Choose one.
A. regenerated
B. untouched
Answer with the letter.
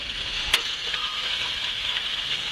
A